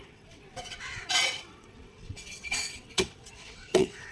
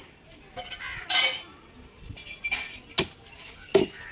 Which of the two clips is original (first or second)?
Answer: second